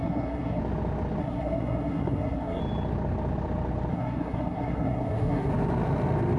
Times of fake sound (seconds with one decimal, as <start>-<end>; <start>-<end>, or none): 0.0-0.6; 1.2-2.6; 3.9-5.5